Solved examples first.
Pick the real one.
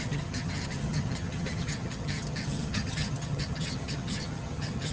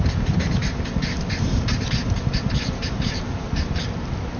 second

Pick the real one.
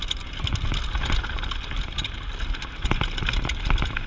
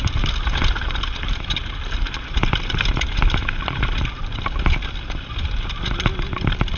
first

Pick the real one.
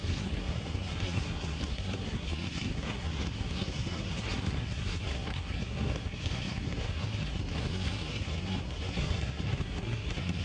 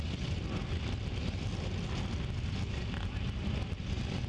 second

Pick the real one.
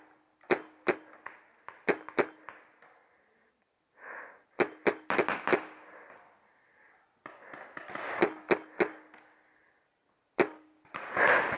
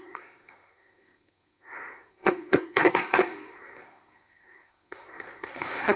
first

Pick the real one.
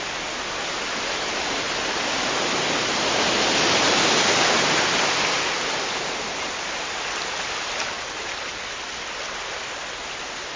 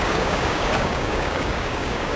first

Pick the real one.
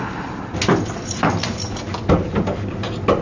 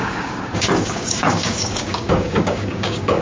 first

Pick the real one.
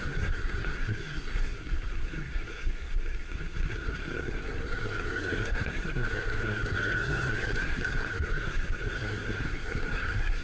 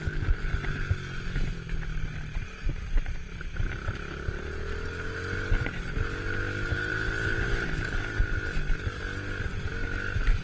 second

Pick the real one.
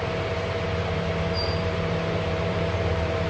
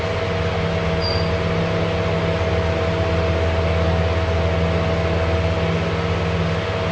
second